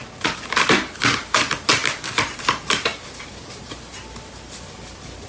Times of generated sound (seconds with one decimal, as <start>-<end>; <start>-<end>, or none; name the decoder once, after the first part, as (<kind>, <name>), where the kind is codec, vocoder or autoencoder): none